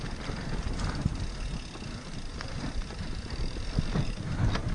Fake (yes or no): no